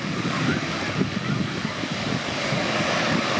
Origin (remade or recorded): remade